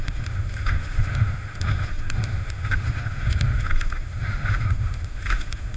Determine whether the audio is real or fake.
fake